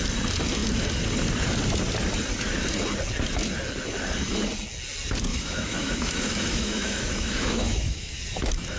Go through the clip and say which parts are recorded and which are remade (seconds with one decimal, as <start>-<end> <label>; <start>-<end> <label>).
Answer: 0.0-5.3 recorded; 5.3-8.2 remade; 8.2-8.8 recorded